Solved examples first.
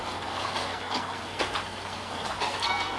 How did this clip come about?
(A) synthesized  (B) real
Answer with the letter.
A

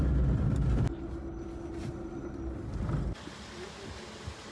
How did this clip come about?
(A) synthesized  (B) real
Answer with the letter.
B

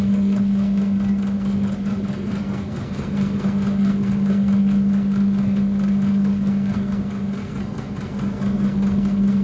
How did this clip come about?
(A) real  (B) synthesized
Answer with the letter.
B